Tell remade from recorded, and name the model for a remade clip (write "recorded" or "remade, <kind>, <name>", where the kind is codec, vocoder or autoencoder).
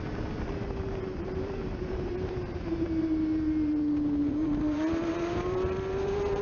remade, vocoder, BigVGAN v2